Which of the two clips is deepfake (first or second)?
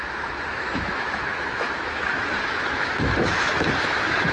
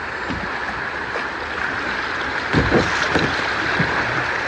first